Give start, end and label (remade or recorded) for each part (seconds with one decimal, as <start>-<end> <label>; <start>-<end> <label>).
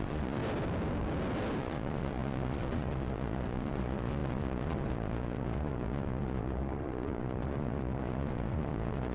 0.0-0.4 remade; 0.4-1.6 recorded; 1.6-9.1 remade